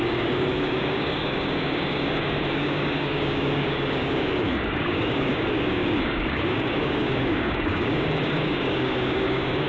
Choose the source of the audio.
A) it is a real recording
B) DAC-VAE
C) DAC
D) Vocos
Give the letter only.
C